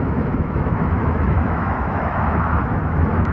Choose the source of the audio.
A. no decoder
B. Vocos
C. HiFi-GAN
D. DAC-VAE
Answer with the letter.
D